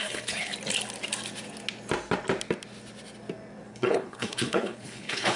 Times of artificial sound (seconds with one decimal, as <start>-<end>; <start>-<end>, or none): 0.0-0.5; 3.7-5.4

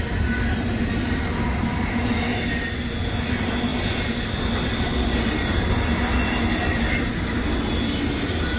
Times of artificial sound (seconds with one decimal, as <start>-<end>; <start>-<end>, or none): none

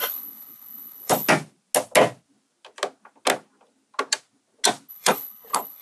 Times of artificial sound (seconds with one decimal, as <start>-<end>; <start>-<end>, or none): 0.0-1.3; 4.9-5.8

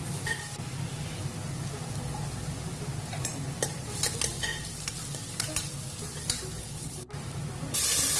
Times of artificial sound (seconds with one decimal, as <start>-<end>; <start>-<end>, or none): 6.6-7.1

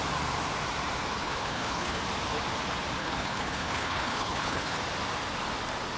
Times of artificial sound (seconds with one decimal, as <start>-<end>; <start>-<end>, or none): 1.2-2.0; 3.0-4.8